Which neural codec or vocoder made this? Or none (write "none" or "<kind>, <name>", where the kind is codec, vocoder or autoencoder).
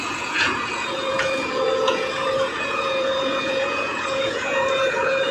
vocoder, Vocos